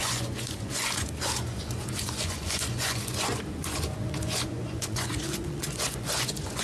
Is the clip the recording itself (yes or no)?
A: no